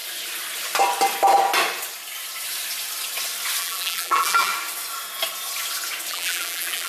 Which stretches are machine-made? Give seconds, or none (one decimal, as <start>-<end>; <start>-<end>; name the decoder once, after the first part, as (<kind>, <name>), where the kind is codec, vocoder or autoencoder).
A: 3.6-4.5 (vocoder, BigVGAN v2); 6.1-6.9